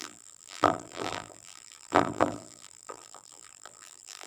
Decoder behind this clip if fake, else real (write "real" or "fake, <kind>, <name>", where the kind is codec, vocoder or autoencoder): fake, vocoder, BigVGAN v2